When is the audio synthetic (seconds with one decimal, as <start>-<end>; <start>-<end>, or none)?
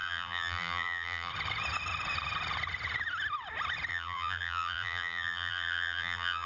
0.0-1.3; 3.9-6.5